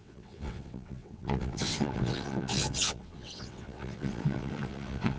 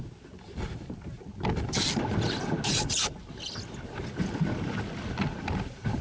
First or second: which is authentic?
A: second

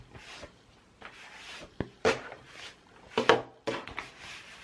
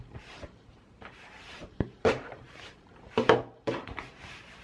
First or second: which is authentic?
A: first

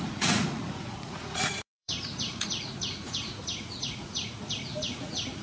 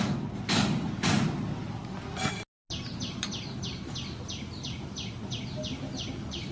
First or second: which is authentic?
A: second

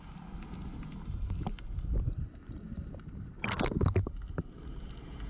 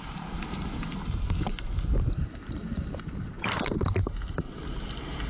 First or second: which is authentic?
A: first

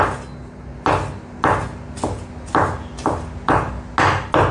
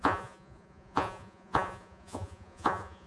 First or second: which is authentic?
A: first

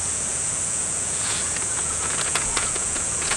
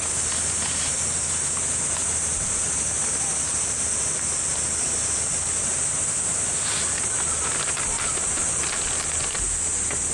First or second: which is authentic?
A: second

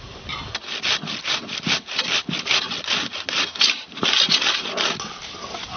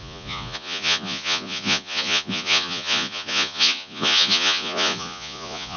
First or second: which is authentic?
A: first